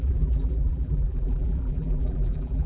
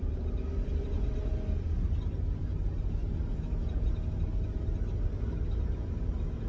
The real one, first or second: second